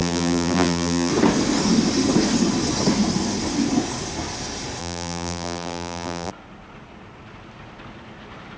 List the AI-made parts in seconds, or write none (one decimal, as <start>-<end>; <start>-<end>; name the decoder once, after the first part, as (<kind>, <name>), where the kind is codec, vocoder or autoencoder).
0.0-1.1 (vocoder, BigVGAN v2); 4.8-6.3